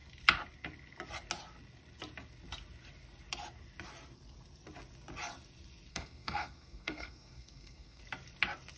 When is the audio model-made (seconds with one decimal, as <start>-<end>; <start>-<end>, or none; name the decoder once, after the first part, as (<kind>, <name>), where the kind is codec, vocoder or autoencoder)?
5.9-8.0 (codec, SNAC)